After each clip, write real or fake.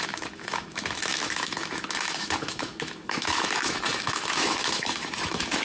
fake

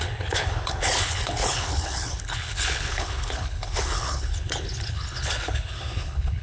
fake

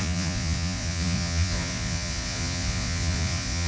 fake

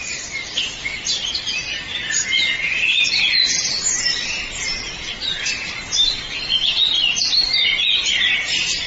real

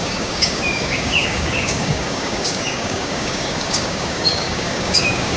fake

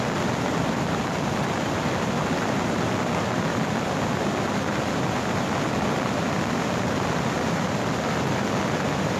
real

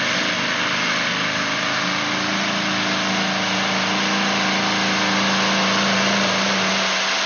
real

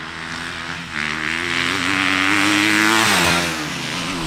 real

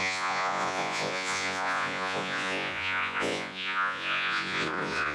fake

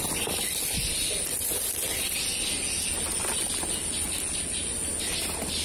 real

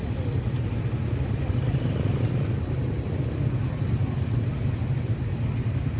real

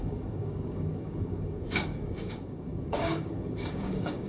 fake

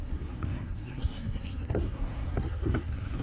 fake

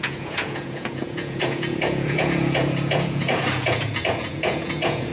fake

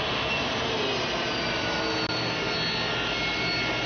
real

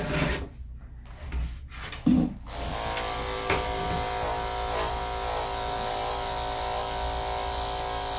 real